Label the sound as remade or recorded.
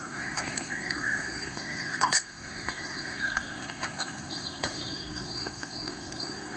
remade